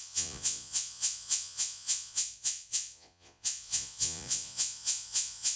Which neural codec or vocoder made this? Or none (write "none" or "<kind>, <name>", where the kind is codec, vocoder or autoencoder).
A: vocoder, Vocos